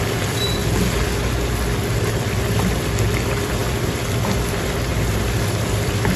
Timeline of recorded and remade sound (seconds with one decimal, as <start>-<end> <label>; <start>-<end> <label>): 0.0-0.6 remade; 0.6-1.8 recorded; 1.8-4.9 remade; 4.9-5.5 recorded; 5.5-6.2 remade